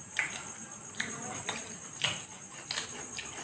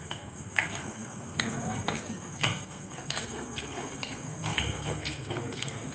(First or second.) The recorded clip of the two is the first